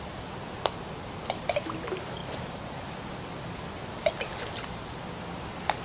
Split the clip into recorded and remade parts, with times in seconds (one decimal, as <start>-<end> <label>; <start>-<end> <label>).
0.0-5.8 recorded